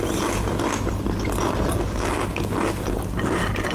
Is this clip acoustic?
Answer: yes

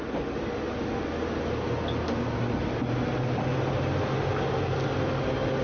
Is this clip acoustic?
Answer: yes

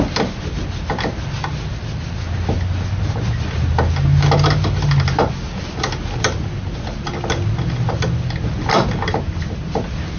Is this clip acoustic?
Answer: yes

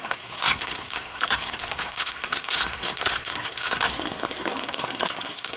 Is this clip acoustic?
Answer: no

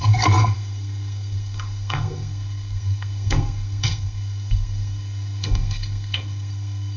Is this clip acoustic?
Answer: no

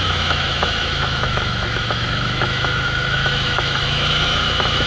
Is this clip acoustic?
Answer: no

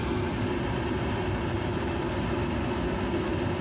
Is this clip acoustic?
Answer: yes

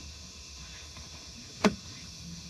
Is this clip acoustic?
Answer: no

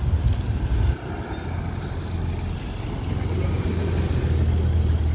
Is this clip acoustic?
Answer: yes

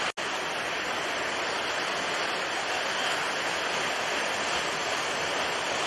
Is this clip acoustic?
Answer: yes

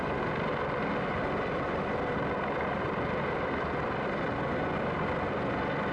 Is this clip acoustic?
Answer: yes